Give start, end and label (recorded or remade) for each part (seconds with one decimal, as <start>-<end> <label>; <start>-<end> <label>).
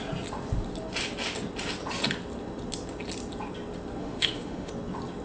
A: 0.0-4.0 recorded; 4.0-4.7 remade; 4.7-5.2 recorded